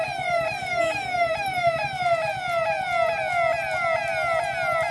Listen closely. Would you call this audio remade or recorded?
recorded